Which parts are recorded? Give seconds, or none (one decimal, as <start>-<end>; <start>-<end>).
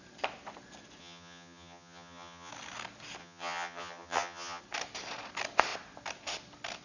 0.0-1.0; 2.5-3.2; 4.6-6.8